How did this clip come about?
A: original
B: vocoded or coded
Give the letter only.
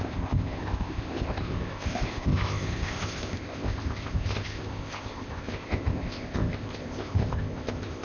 B